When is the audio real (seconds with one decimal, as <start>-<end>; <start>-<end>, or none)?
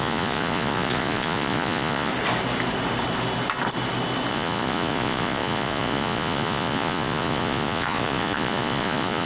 2.1-4.3